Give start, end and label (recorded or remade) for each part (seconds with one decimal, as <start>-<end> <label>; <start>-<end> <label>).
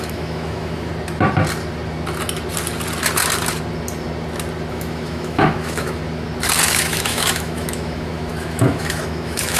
0.0-0.9 remade; 0.9-4.7 recorded; 4.7-6.0 remade; 6.0-6.6 recorded; 6.6-9.6 remade